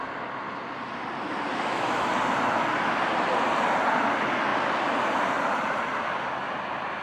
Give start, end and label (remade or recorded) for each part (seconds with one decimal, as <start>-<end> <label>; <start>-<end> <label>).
0.0-1.5 recorded; 1.5-2.1 remade; 2.1-7.0 recorded